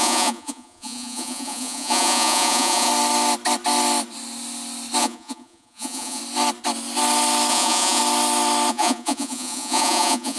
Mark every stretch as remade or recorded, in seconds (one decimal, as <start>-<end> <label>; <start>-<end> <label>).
0.0-2.9 remade; 2.9-5.0 recorded; 5.0-6.2 remade; 6.2-7.5 recorded; 7.5-8.0 remade; 8.0-8.7 recorded; 8.7-10.4 remade